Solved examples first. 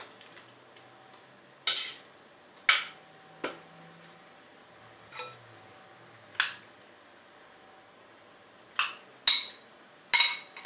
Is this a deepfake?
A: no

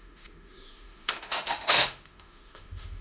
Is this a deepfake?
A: yes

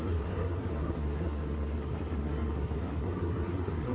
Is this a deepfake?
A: yes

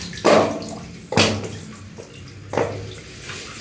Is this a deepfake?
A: no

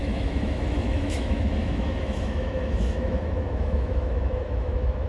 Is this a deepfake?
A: yes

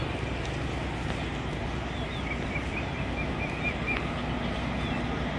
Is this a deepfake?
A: no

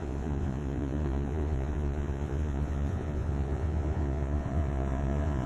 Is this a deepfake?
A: yes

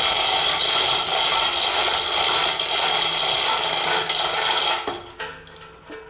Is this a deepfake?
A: no